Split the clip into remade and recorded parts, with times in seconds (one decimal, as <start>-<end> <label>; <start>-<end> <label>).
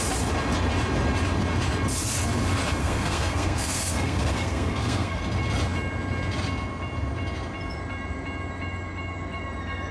0.0-2.8 recorded; 2.8-5.2 remade; 5.2-9.9 recorded